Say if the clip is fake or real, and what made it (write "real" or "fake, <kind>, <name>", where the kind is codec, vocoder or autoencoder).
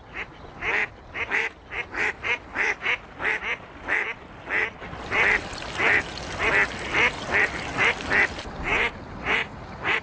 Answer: real